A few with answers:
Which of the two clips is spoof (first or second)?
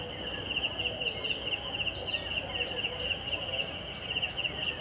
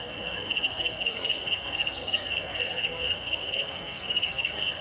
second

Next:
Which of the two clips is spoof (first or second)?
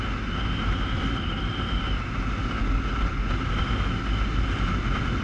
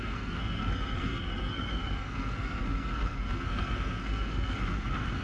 second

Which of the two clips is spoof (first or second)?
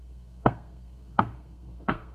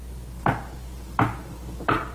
first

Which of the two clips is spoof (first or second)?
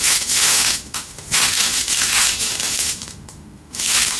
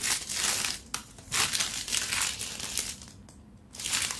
first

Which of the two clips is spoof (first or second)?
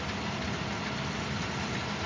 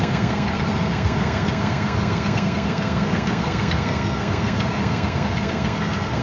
second